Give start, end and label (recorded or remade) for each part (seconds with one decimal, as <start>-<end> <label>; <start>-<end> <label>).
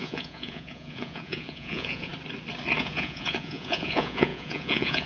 0.0-2.1 remade; 2.1-2.8 recorded; 2.8-5.1 remade